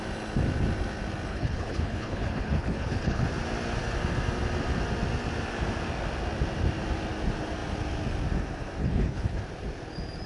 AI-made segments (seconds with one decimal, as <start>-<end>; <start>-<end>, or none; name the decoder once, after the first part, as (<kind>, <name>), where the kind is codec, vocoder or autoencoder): 1.3-3.2 (codec, HILCodec); 8.8-9.4

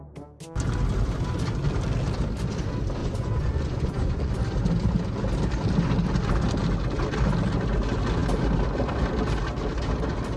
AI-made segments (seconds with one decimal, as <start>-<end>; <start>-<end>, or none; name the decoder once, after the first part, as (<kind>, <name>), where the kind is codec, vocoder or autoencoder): 3.0-4.3 (vocoder, Vocos)

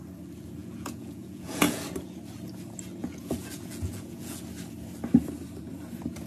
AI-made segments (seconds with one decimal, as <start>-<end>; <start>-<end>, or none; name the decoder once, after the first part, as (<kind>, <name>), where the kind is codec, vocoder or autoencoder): 0.6-1.8 (vocoder, Vocos); 3.0-4.4